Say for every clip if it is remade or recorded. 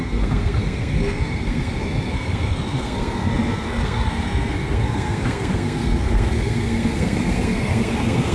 remade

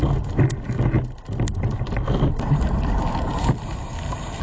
recorded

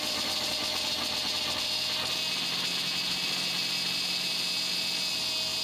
recorded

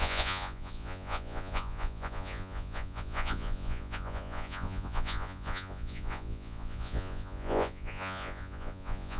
remade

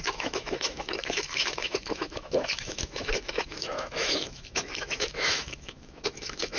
remade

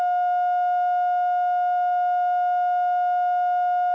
recorded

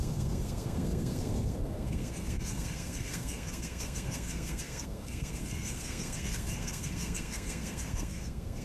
remade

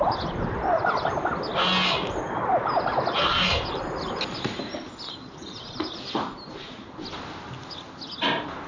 recorded